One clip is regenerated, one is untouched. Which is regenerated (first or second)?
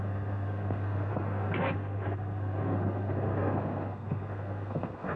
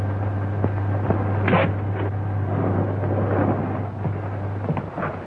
first